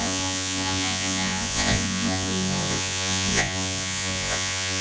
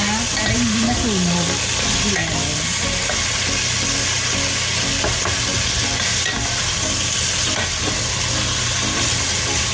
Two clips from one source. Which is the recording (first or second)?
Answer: second